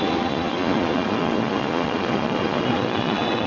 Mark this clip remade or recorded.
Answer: remade